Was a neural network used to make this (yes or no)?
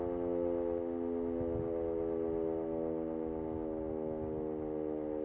no